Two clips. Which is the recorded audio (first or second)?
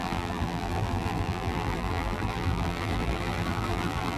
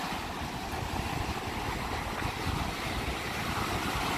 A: second